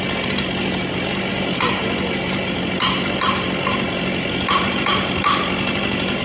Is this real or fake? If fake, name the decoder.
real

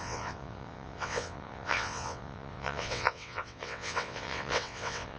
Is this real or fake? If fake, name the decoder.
fake, vocoder, WaveNeXt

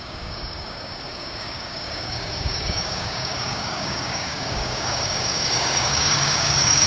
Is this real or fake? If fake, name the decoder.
fake, codec, DAC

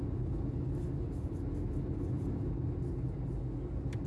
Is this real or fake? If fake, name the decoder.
real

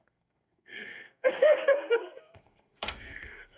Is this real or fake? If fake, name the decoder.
fake, codec, SNAC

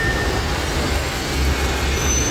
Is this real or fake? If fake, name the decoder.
real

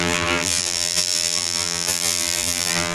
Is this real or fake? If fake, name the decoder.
fake, vocoder, BigVGAN v2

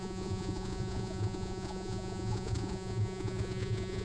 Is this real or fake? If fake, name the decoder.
fake, vocoder, Vocos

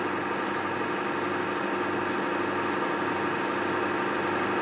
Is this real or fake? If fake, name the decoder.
real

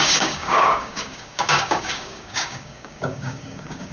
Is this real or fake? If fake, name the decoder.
fake, codec, DAC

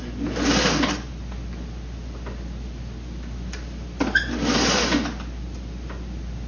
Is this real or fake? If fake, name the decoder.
real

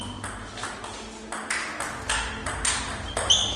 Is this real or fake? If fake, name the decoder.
real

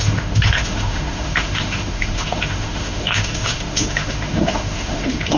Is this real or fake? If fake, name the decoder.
fake, autoencoder, DAC-VAE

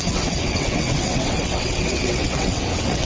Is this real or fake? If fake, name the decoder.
fake, vocoder, WaveNeXt